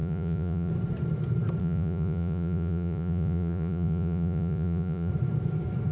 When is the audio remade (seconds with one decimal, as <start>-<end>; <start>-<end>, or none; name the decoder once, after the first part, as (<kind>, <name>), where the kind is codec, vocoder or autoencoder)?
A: 0.0-0.7 (vocoder, Vocos); 1.6-5.1